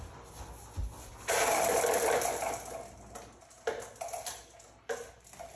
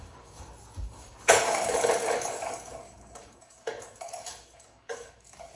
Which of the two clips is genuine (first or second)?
first